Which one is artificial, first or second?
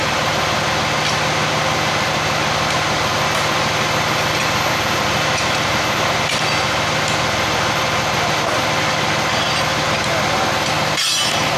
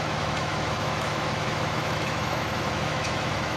second